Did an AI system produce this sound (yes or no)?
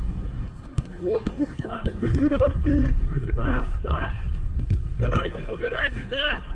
yes